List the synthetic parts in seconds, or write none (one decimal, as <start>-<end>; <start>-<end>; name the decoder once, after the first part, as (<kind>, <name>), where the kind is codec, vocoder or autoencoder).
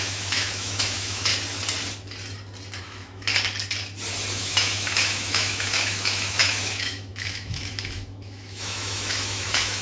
0.0-1.3 (autoencoder, DAC-VAE); 2.8-3.3; 4.3-9.8